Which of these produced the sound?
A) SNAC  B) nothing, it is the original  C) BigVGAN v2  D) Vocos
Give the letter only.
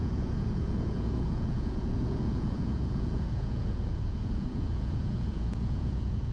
D